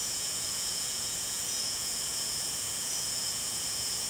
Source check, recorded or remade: remade